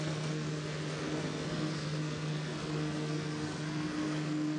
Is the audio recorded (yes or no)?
no